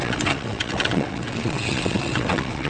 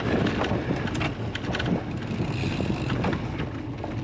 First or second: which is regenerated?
first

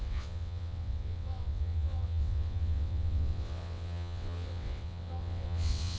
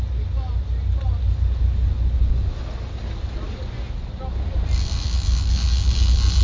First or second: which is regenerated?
first